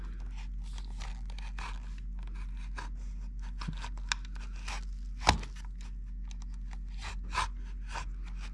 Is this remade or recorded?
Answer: recorded